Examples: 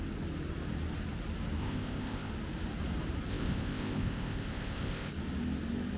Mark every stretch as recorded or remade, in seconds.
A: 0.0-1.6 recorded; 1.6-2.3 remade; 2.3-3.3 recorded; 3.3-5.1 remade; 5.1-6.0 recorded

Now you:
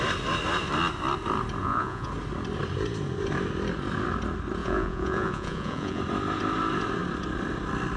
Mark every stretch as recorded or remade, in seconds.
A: 0.0-1.6 recorded; 1.6-2.1 remade; 2.1-4.6 recorded; 4.6-6.0 remade; 6.0-8.0 recorded